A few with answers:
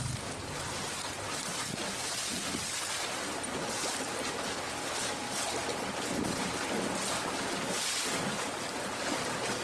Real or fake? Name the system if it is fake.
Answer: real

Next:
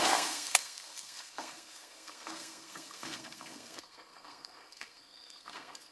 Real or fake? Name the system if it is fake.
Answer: fake, codec, SNAC